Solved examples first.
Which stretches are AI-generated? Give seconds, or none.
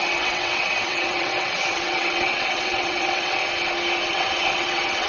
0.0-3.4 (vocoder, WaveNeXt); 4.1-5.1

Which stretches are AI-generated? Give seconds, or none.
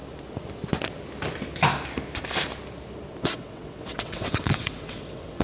3.2-5.4 (vocoder, WaveNeXt)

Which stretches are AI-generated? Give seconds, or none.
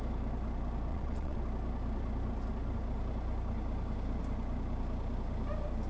0.9-1.4 (vocoder, WaveNeXt)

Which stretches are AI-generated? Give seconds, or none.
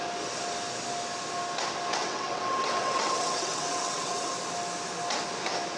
2.0-4.3 (vocoder, WaveNeXt)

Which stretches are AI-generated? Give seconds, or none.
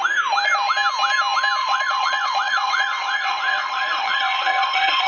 1.6-5.1 (vocoder, WaveNeXt)